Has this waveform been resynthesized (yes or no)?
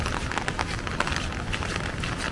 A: no